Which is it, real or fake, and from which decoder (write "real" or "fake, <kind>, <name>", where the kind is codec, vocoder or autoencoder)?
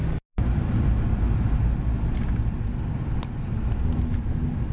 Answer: real